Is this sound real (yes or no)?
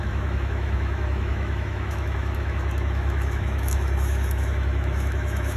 no